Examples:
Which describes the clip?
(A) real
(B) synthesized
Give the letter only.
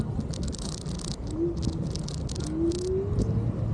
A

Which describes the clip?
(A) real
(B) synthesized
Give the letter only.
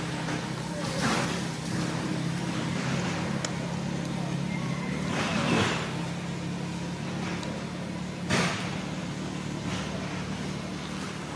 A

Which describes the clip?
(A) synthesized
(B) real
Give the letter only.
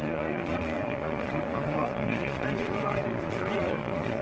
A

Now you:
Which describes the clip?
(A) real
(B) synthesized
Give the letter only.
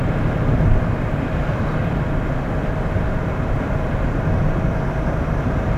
B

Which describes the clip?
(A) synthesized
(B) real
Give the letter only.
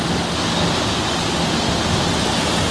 B